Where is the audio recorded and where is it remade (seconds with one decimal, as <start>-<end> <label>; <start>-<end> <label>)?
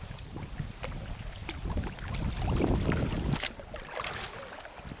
0.0-1.4 recorded; 1.4-4.4 remade; 4.4-5.0 recorded